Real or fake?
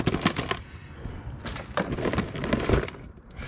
real